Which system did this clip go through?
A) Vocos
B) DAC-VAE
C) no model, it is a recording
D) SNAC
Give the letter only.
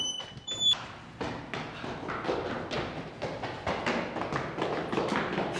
C